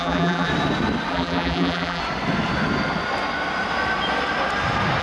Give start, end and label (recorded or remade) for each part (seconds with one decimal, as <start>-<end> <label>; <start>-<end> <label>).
0.0-0.5 remade; 0.5-1.1 recorded; 1.1-2.0 remade; 2.0-5.0 recorded

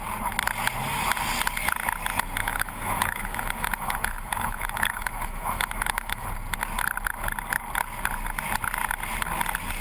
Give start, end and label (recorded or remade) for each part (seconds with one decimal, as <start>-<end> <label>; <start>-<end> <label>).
0.0-2.4 recorded; 2.4-6.3 remade; 6.3-9.8 recorded

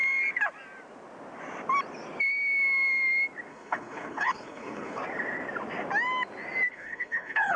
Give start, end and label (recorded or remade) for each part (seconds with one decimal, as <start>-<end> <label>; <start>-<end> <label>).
0.0-3.5 recorded; 3.5-5.0 remade; 5.0-6.7 recorded; 6.7-7.6 remade

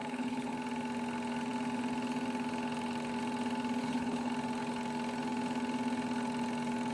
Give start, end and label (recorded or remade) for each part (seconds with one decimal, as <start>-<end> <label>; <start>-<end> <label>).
0.0-0.5 remade; 0.5-3.8 recorded; 3.8-4.3 remade; 4.3-6.9 recorded

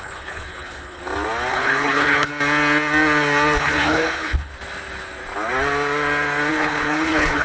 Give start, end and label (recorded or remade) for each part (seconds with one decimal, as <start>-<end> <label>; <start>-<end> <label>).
0.0-1.0 remade; 1.0-1.5 recorded; 1.5-2.3 remade; 2.3-3.6 recorded; 3.6-4.5 remade; 4.5-6.5 recorded; 6.5-7.4 remade

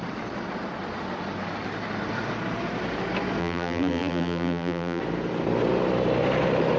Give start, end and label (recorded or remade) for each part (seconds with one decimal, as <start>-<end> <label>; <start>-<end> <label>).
0.0-3.4 recorded; 3.4-5.0 remade; 5.0-6.8 recorded

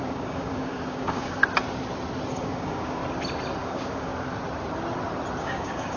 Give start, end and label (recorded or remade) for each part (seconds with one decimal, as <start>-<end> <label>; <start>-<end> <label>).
0.0-1.4 remade; 1.4-2.4 recorded; 2.4-3.0 remade; 3.0-3.6 recorded; 3.6-4.1 remade; 4.1-5.4 recorded; 5.4-6.0 remade

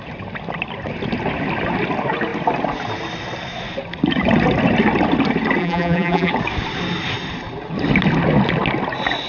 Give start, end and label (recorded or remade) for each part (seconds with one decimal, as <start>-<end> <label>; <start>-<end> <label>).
0.0-5.6 recorded; 5.6-6.3 remade; 6.3-9.3 recorded